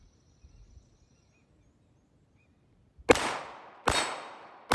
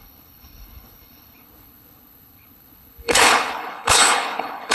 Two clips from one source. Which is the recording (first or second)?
first